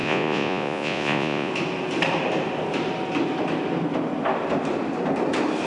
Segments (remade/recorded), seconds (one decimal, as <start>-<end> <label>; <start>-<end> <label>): 0.0-1.5 remade; 1.5-5.7 recorded